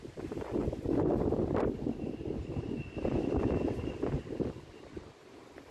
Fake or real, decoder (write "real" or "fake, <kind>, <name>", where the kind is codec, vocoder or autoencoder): fake, vocoder, BigVGAN v2